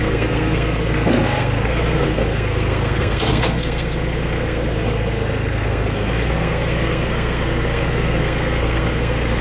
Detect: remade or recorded remade